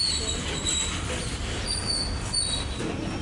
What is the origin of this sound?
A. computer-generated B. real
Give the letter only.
B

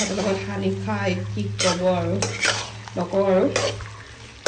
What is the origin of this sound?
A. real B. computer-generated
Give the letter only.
A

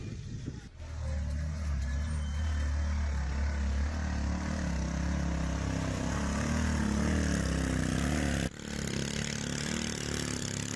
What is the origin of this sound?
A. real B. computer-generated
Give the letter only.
A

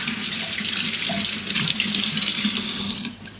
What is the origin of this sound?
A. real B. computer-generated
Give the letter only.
A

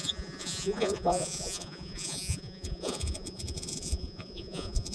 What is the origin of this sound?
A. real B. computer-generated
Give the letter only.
B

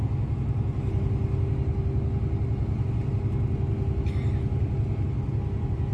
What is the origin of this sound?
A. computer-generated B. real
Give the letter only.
B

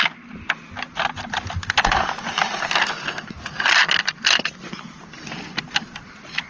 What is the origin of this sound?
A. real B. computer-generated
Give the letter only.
A